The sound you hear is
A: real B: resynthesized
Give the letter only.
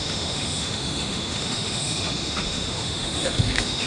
B